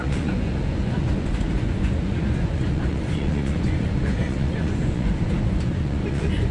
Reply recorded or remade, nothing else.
remade